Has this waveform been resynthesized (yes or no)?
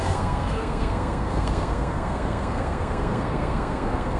yes